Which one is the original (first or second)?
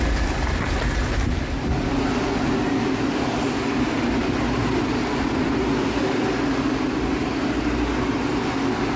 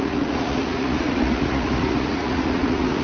first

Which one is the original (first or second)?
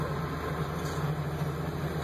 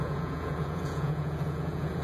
first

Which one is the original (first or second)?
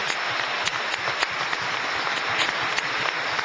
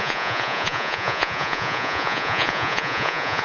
first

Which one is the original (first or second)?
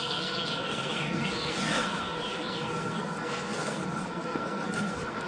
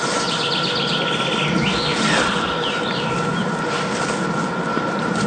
second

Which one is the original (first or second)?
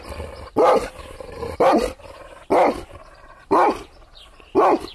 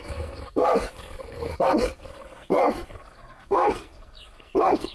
first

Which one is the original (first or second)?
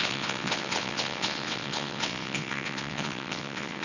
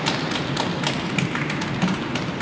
second